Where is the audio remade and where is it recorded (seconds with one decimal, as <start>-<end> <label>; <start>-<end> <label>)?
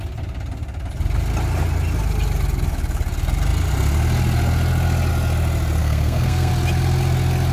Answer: 0.0-5.8 recorded; 5.8-6.5 remade; 6.5-7.5 recorded